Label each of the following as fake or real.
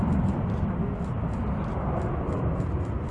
real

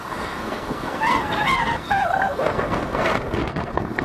fake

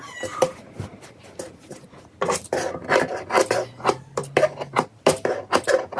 real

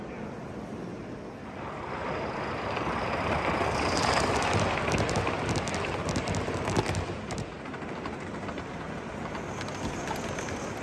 real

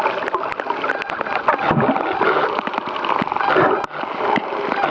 real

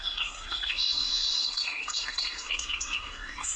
fake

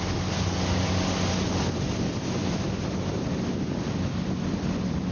real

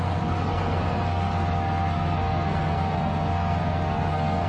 fake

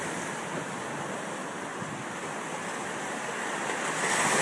real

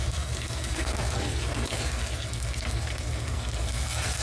fake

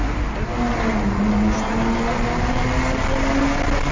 real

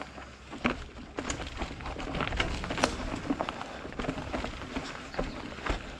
real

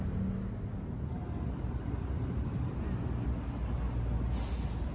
real